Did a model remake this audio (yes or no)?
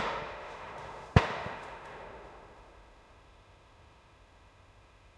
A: yes